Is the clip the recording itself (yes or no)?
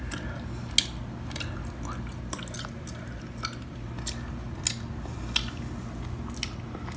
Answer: yes